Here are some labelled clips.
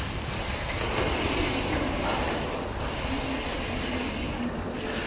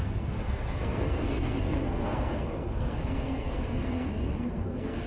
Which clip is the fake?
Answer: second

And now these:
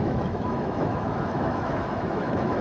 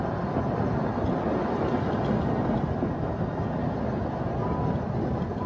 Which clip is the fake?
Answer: first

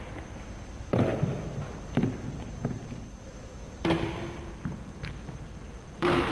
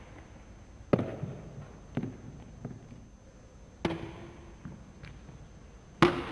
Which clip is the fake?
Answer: first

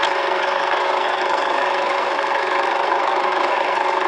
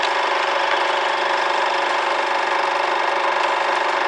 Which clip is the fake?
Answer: first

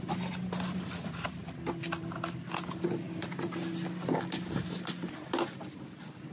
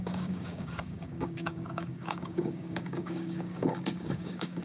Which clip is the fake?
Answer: second